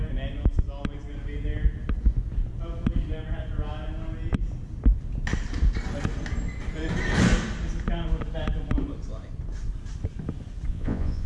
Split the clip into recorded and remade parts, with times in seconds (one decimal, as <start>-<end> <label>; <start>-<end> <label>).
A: 0.0-10.7 recorded; 10.7-11.3 remade